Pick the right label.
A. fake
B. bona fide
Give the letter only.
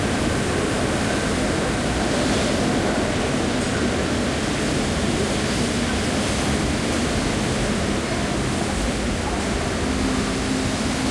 B